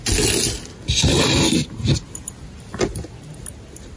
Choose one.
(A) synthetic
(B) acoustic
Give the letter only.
B